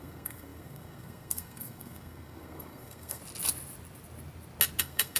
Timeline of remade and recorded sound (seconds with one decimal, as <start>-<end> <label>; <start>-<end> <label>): 0.0-3.2 remade; 3.2-4.8 recorded; 4.8-5.2 remade